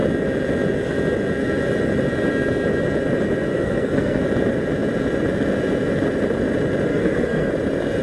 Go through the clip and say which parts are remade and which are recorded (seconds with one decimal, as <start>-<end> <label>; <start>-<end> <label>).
0.0-3.5 recorded; 3.5-4.2 remade; 4.2-6.9 recorded; 6.9-7.5 remade; 7.5-8.0 recorded